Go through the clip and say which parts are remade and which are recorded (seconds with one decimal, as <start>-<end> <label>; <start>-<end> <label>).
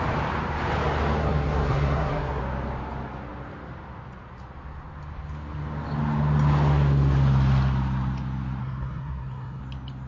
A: 0.0-1.2 recorded; 1.2-2.4 remade; 2.4-8.6 recorded; 8.6-9.6 remade; 9.6-10.1 recorded